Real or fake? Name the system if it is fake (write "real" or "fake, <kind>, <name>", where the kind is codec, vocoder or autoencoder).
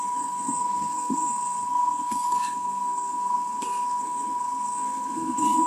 fake, codec, SNAC